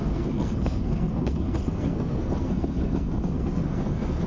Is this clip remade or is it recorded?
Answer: remade